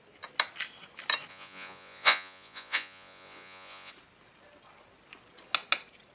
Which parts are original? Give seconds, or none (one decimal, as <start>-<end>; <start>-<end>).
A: 0.0-1.3; 3.9-6.1